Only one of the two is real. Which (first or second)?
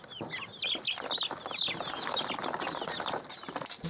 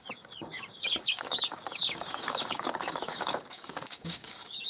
first